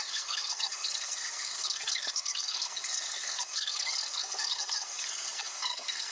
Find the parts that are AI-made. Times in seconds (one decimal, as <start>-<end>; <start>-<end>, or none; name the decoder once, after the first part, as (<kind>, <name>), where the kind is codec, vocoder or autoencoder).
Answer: 0.0-6.1 (codec, SNAC)